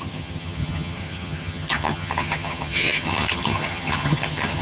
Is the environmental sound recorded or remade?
remade